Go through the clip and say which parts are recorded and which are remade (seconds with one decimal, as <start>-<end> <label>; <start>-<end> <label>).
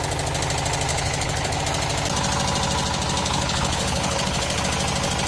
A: 0.0-0.9 recorded; 0.9-1.6 remade; 1.6-3.2 recorded; 3.2-4.6 remade; 4.6-5.3 recorded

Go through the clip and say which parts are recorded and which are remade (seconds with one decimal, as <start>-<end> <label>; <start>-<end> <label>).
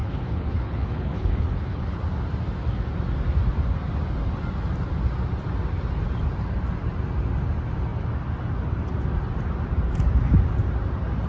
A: 0.0-2.0 remade; 2.0-11.3 recorded